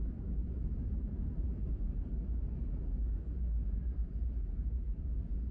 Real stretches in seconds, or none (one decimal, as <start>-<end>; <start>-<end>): 0.0-0.4; 1.8-4.0; 5.1-5.5